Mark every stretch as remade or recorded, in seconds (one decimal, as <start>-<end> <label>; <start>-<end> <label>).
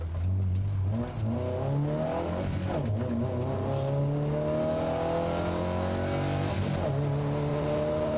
0.0-7.5 recorded; 7.5-8.2 remade